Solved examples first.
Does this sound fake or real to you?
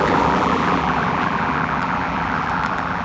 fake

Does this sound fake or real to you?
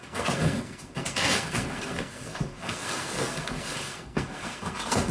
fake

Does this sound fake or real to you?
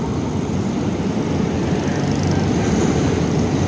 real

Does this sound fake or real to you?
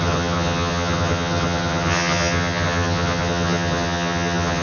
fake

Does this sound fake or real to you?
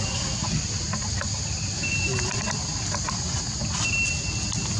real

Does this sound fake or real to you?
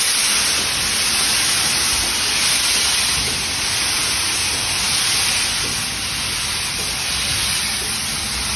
real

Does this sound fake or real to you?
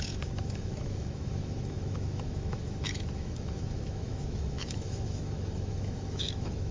fake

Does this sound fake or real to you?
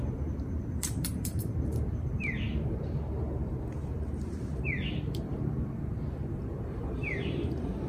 fake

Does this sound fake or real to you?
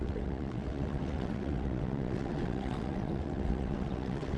fake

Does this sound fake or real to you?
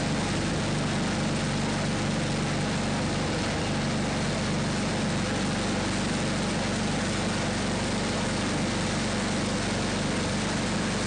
real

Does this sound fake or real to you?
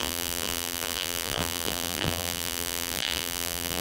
fake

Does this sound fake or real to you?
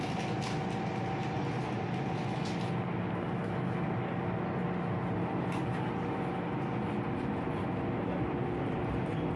real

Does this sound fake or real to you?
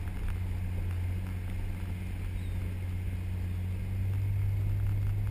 real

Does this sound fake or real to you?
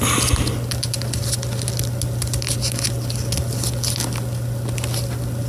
real